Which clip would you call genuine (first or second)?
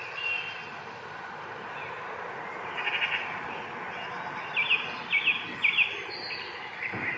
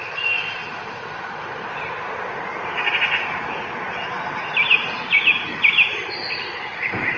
first